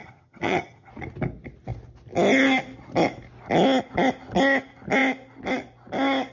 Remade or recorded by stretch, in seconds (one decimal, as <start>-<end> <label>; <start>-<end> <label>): 0.0-0.9 remade; 0.9-6.3 recorded